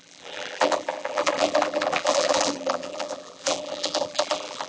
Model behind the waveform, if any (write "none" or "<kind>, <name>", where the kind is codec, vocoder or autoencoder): vocoder, BigVGAN v2